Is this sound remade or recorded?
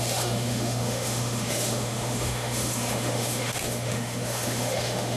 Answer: remade